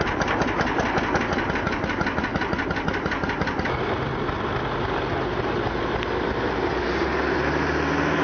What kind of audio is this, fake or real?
real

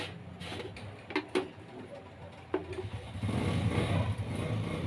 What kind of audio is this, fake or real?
real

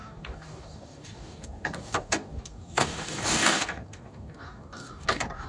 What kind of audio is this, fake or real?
fake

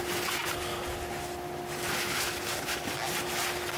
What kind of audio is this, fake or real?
real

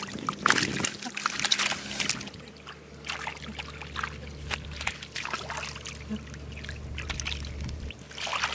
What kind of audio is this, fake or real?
real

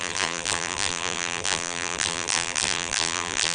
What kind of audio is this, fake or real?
fake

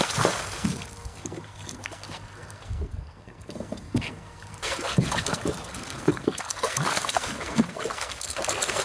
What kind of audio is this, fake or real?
fake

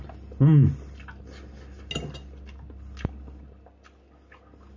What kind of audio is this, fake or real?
real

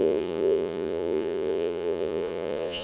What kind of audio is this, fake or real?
fake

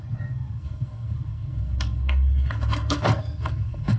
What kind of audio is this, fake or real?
fake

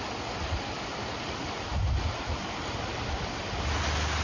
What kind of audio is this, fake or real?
real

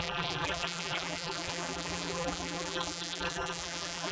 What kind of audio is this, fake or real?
fake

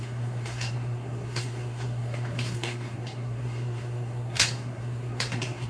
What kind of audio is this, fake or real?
fake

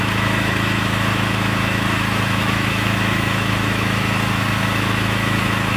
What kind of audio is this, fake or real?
fake